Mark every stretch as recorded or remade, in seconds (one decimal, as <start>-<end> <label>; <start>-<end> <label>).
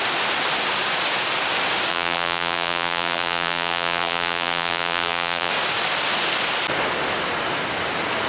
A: 0.0-1.9 recorded; 1.9-5.5 remade; 5.5-8.3 recorded